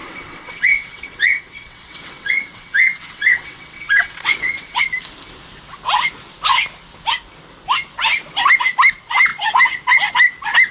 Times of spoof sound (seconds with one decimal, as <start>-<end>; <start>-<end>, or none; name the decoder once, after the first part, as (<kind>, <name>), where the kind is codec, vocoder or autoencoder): 0.0-4.8 (vocoder, WaveNeXt)